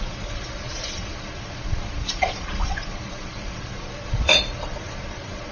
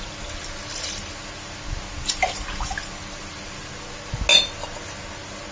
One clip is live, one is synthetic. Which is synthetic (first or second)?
first